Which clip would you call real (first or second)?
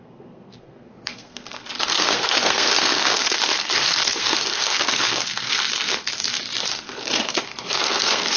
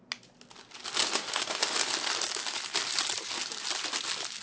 second